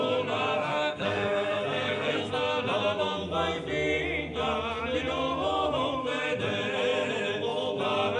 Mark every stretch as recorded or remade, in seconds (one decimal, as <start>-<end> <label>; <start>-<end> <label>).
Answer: 0.0-0.7 recorded; 0.7-2.3 remade; 2.3-8.2 recorded